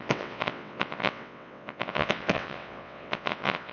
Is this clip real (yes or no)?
no